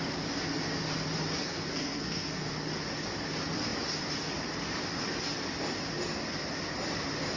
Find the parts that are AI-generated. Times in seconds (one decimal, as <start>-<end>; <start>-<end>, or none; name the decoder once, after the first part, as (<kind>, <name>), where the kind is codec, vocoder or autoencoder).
1.4-2.5 (codec, SNAC)